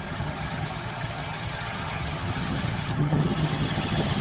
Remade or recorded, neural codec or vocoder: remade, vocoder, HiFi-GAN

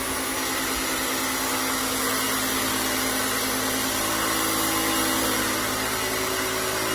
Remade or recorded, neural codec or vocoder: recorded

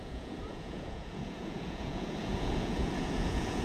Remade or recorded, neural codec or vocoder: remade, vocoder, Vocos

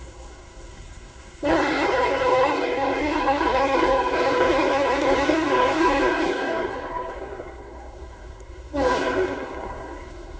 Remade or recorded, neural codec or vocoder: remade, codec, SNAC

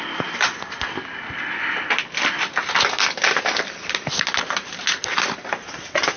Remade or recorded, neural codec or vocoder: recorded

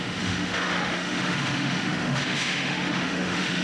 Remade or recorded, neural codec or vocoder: remade, autoencoder, DAC-VAE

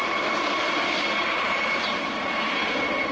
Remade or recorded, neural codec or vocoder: recorded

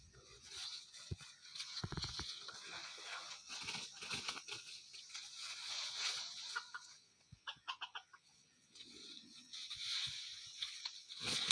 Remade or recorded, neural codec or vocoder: remade, vocoder, Vocos